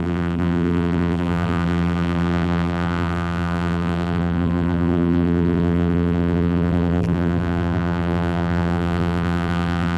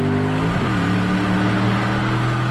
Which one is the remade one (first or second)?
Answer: first